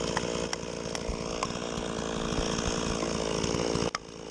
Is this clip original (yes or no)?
yes